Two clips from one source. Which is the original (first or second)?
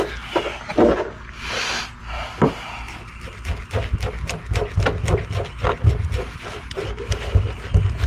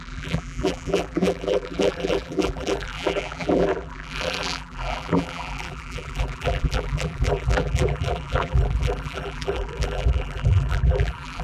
first